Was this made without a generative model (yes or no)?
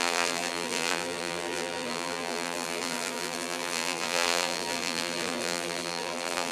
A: no